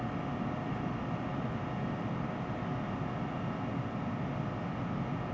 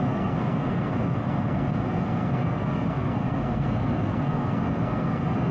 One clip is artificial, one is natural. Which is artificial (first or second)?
second